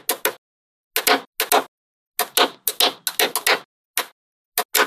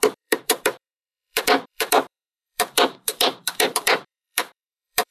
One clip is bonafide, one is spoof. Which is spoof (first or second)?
second